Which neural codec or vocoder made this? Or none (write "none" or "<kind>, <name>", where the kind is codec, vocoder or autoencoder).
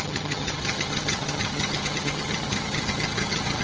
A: vocoder, HiFi-GAN